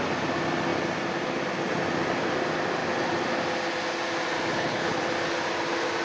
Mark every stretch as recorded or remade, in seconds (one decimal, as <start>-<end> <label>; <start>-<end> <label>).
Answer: 0.0-4.5 recorded; 4.5-5.0 remade; 5.0-6.0 recorded